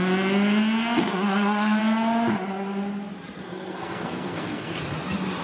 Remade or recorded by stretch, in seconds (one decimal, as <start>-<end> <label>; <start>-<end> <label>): 0.0-1.0 recorded; 1.0-1.8 remade; 1.8-3.5 recorded; 3.5-4.8 remade; 4.8-5.4 recorded